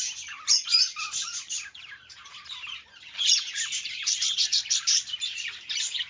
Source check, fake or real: fake